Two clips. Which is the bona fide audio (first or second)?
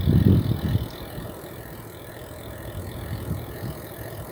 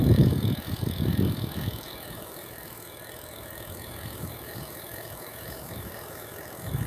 first